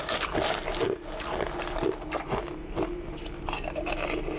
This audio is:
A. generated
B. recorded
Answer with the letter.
B